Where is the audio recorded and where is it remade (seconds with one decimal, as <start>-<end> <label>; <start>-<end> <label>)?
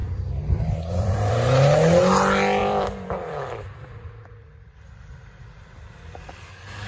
0.0-1.3 remade; 1.3-2.6 recorded; 2.6-6.9 remade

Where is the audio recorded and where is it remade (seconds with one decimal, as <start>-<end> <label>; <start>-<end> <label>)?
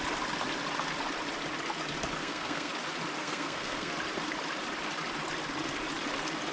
0.0-2.2 recorded; 2.2-2.7 remade; 2.7-3.2 recorded; 3.2-3.9 remade; 3.9-6.5 recorded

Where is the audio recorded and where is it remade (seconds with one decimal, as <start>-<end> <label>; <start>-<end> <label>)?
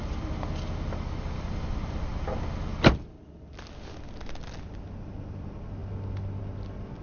0.0-7.0 recorded